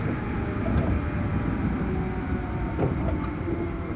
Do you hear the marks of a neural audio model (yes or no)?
no